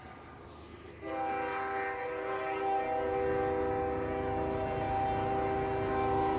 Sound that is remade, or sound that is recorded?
recorded